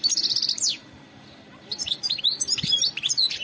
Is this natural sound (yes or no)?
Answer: no